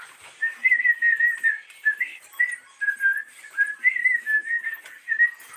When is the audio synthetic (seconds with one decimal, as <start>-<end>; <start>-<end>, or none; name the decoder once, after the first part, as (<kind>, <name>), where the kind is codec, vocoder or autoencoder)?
4.0-4.6 (autoencoder, DAC-VAE)